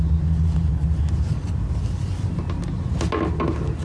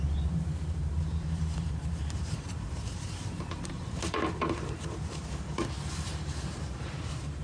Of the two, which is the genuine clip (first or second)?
first